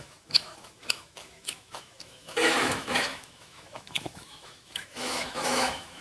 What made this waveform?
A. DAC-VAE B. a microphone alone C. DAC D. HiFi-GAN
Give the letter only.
A